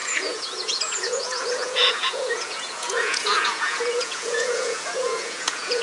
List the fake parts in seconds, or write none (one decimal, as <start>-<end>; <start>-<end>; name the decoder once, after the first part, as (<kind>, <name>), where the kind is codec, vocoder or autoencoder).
0.0-5.8 (vocoder, Vocos)

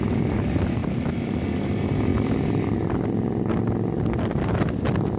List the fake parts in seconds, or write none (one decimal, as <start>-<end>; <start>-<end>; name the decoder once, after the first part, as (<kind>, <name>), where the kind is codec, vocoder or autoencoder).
none